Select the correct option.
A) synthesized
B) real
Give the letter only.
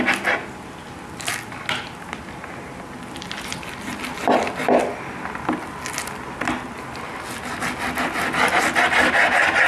B